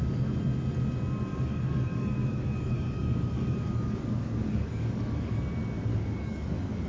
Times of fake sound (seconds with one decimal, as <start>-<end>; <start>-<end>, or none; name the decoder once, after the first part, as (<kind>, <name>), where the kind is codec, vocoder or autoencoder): 1.3-5.4 (codec, DAC); 5.9-6.9